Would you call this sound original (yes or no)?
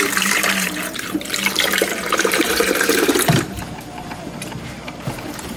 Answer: no